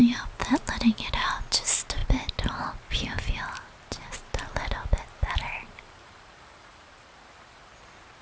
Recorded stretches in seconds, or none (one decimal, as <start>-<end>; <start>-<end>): 0.6-5.4; 7.7-8.2